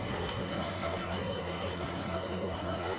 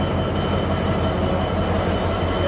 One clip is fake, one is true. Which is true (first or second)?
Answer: second